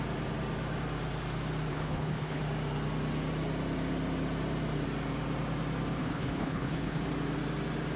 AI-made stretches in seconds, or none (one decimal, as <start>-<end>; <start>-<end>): 1.7-2.4; 6.0-7.0